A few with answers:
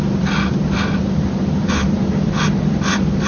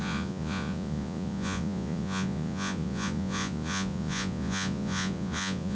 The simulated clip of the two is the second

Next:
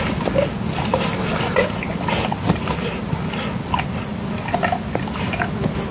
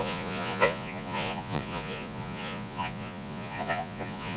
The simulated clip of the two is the second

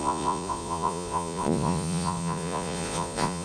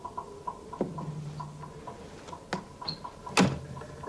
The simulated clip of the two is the first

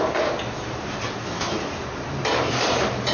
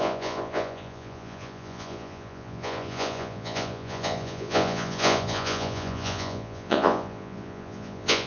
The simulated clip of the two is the second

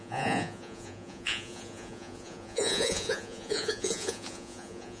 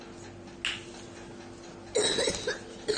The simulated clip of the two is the first